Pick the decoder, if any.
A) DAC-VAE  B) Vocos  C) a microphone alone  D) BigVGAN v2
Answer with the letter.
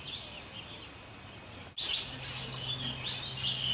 C